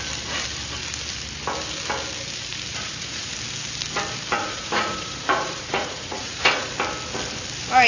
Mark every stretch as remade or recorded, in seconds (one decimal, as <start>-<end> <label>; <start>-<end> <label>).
0.0-2.7 recorded; 2.7-3.3 remade; 3.3-4.4 recorded; 4.4-6.7 remade; 6.7-7.9 recorded